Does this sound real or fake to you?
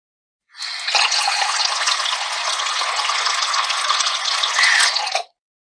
fake